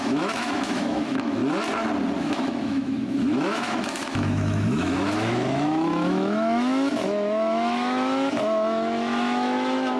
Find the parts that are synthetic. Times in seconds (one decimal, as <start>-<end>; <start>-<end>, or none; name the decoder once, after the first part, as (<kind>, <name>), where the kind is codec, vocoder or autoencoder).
0.0-1.4 (autoencoder, DAC-VAE); 2.2-10.0